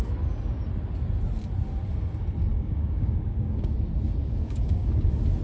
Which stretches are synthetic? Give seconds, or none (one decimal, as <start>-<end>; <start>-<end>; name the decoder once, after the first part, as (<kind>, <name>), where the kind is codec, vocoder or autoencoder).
2.5-3.7 (codec, DAC); 4.2-4.9